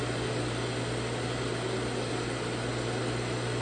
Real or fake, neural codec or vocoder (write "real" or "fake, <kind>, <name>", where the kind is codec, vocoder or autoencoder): real